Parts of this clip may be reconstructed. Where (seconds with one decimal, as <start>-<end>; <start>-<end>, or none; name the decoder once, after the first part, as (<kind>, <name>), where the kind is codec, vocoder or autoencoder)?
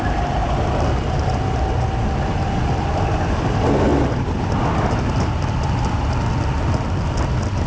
none